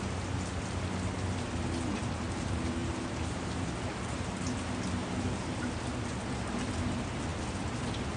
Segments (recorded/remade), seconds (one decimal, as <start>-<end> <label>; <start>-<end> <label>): 0.0-2.8 recorded; 2.8-3.7 remade; 3.7-5.0 recorded; 5.0-5.7 remade; 5.7-8.2 recorded